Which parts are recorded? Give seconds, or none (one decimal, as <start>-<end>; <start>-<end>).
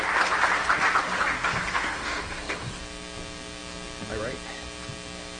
0.0-1.4; 2.8-5.4